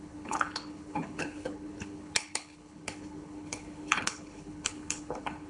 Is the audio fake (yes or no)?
yes